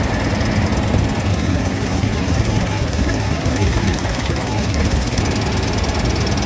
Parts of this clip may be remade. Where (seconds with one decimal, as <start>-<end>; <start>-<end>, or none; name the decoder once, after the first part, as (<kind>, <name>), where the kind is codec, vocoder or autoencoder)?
1.3-5.2 (codec, SNAC)